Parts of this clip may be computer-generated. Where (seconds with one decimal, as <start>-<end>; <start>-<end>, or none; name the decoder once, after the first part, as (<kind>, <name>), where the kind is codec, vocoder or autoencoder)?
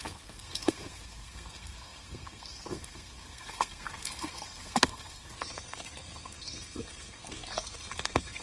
0.0-8.4 (codec, SNAC)